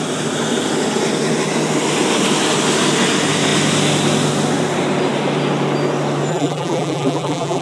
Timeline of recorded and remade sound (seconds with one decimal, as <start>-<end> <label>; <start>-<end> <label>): 0.0-6.3 recorded; 6.3-7.6 remade